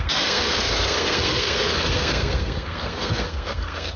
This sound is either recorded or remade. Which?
remade